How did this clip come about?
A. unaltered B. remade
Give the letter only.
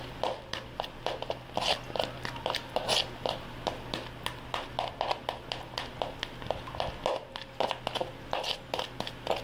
A